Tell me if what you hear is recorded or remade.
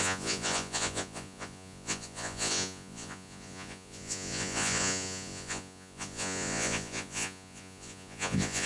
remade